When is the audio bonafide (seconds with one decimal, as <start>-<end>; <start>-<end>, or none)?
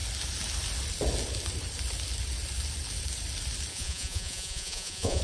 0.0-3.7